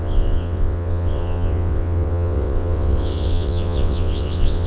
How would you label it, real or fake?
fake